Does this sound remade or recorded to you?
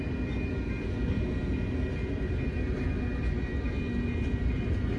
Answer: recorded